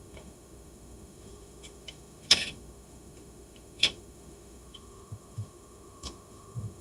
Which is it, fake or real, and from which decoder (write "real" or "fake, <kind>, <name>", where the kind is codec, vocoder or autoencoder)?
fake, autoencoder, DAC-VAE